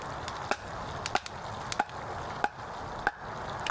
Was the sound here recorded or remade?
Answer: recorded